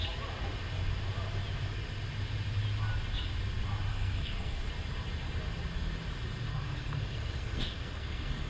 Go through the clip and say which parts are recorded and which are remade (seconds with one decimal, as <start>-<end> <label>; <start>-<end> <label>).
0.0-3.9 recorded; 3.9-4.7 remade; 4.7-6.5 recorded; 6.5-8.5 remade